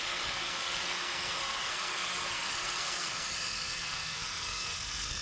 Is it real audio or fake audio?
fake